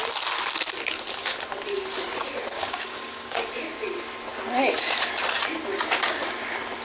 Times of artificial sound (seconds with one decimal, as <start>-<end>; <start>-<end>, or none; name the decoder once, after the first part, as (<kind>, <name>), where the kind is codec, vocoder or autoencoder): 2.6-3.5 (codec, DAC)